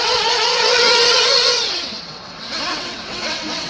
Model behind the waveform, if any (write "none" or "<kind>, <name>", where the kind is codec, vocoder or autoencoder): vocoder, WaveNeXt